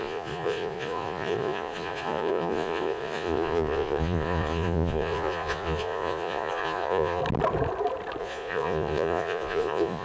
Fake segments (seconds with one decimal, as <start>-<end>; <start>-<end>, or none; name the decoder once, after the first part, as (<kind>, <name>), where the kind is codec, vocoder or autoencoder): 0.0-7.2 (vocoder, Vocos); 8.2-10.0